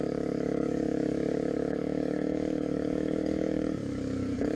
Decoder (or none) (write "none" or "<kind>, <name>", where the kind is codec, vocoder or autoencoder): codec, DAC